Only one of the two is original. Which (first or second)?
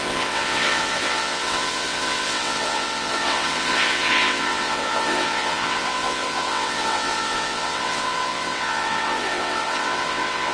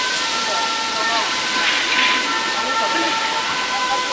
second